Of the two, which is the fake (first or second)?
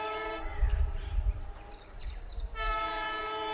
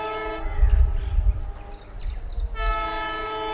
first